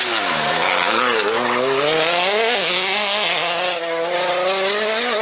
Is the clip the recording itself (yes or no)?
yes